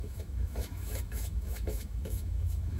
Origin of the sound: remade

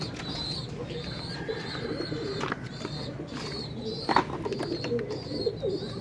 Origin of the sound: recorded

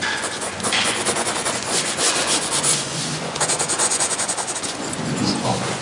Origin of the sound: remade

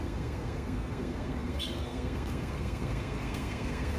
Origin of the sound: remade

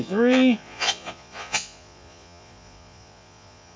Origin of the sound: remade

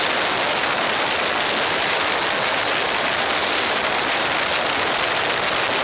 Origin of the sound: recorded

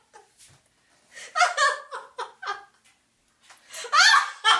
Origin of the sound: recorded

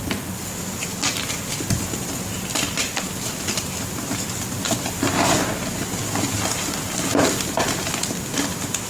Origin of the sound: recorded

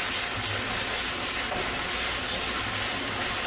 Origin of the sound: recorded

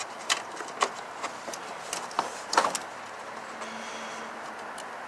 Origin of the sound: recorded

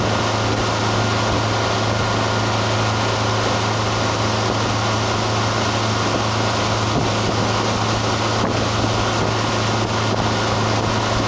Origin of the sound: recorded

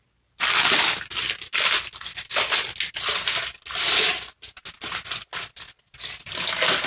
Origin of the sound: recorded